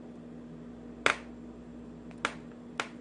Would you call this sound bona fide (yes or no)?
yes